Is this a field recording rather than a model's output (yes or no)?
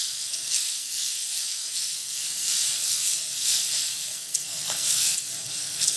no